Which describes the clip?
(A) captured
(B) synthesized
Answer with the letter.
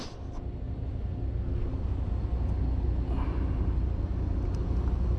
A